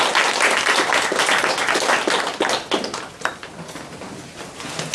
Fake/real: real